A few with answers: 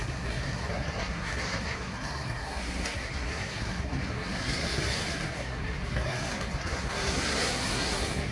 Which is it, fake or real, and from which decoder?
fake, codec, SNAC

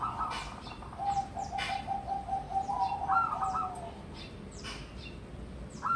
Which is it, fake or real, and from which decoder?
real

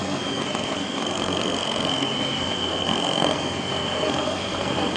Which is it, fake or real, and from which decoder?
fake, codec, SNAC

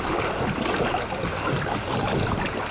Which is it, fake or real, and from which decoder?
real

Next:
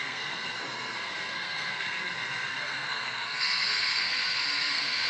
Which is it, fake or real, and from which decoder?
fake, codec, SNAC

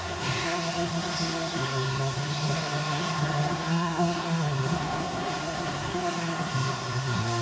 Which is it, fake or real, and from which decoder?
fake, codec, SNAC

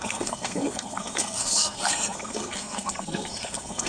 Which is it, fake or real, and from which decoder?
fake, codec, SNAC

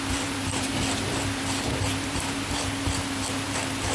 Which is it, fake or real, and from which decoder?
real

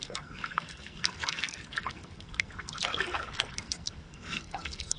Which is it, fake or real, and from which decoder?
fake, codec, SNAC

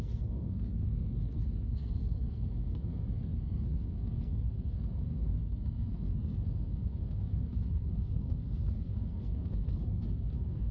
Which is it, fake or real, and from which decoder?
fake, codec, SNAC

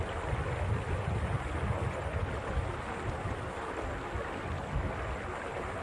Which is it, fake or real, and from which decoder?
real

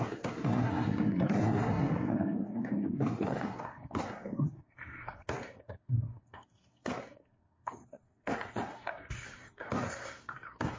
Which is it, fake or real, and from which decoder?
fake, codec, SNAC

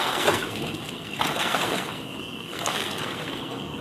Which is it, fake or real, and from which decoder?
fake, codec, SNAC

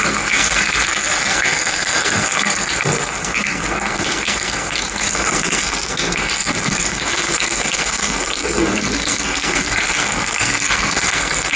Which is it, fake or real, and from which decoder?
fake, codec, SNAC